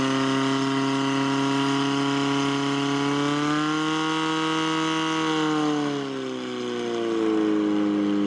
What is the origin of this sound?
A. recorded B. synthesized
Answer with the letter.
A